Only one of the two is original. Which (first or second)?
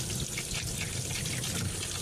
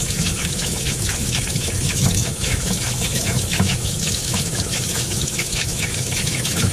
first